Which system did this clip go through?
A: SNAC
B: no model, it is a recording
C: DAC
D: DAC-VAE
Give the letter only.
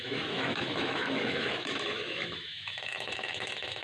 D